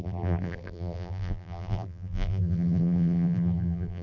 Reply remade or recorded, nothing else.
remade